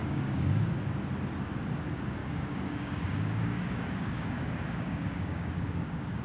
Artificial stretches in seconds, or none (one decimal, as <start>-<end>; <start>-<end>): 0.0-0.6; 2.2-6.2